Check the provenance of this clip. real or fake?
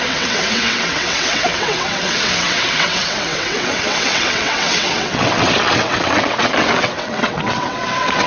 fake